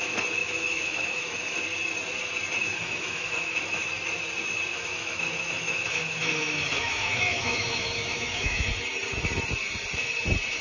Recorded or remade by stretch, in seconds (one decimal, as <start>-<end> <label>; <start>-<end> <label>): 0.0-0.4 recorded; 0.4-1.6 remade; 1.6-2.6 recorded; 2.6-3.9 remade; 3.9-4.7 recorded; 4.7-8.7 remade; 8.7-10.6 recorded